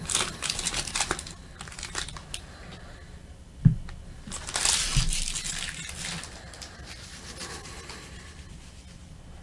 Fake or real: real